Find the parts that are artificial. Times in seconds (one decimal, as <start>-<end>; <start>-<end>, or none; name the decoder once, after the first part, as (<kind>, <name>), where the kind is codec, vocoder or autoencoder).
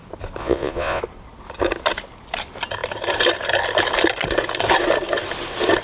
0.4-1.0 (vocoder, Vocos)